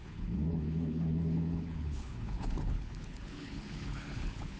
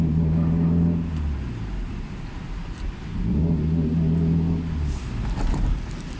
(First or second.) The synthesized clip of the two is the first